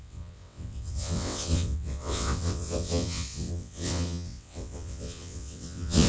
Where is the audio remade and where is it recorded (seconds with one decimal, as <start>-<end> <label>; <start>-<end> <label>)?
0.0-6.1 remade